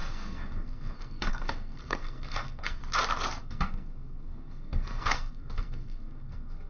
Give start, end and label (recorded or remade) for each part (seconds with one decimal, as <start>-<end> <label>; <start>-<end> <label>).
0.0-2.8 remade; 2.8-3.4 recorded; 3.4-6.7 remade